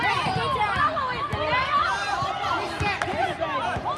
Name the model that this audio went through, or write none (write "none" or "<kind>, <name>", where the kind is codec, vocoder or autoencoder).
none